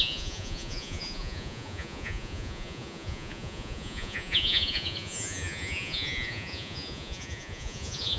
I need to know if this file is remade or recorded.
remade